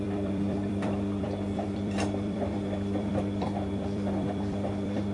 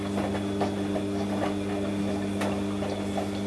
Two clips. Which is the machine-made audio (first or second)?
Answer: first